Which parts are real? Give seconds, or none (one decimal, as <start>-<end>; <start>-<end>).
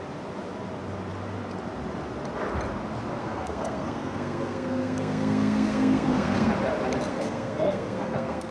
0.0-3.2; 6.5-7.1